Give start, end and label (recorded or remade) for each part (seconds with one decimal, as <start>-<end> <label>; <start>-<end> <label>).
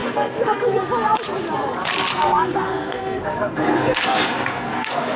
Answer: 0.0-0.8 remade; 0.8-2.1 recorded; 2.1-5.2 remade